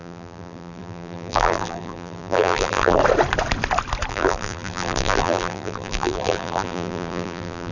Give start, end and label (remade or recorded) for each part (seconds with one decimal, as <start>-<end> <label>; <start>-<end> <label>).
0.0-3.0 remade; 3.0-4.1 recorded; 4.1-7.7 remade